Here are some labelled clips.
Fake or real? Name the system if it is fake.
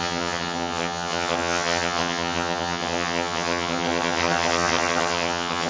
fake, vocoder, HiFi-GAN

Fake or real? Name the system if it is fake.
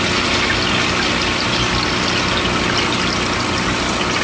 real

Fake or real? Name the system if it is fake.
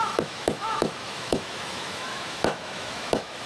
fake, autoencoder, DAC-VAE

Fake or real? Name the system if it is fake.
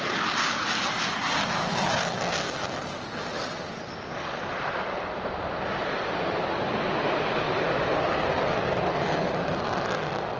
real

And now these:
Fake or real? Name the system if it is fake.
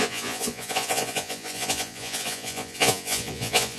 fake, vocoder, Vocos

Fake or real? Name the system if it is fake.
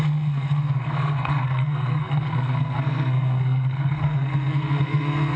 fake, codec, SNAC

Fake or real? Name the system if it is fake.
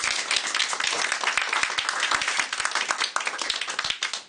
real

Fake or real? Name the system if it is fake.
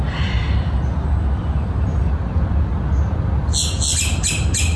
real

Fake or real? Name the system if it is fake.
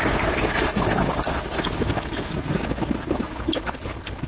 real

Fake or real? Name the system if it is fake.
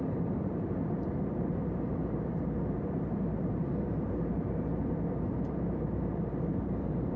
fake, vocoder, BigVGAN v2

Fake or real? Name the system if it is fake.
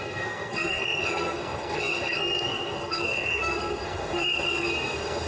fake, codec, SNAC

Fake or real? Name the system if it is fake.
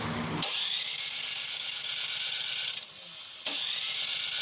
real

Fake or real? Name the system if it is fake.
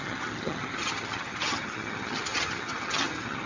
fake, vocoder, HiFi-GAN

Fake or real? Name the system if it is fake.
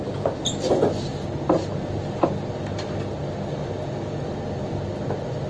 real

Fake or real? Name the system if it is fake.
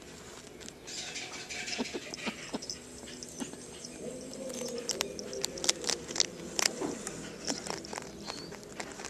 real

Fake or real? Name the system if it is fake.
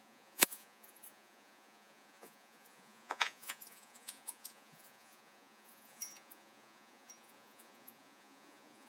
fake, vocoder, Vocos